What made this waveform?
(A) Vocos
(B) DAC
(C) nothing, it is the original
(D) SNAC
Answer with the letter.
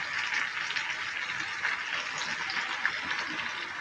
C